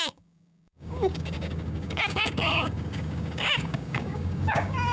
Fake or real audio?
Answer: fake